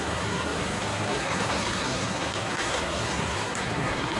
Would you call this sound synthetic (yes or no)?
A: yes